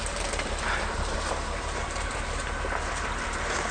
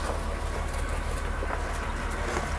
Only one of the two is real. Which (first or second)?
second